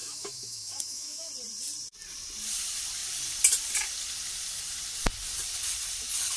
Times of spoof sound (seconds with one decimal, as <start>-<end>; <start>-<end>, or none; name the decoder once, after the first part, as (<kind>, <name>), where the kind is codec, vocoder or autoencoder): 0.0-1.3 (autoencoder, DAC-VAE)